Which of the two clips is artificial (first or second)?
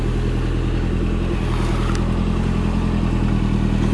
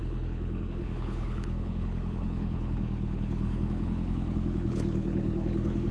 second